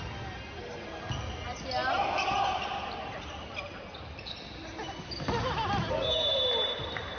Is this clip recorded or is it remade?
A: recorded